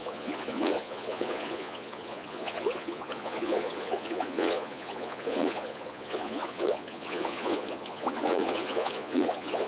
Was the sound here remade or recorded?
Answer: remade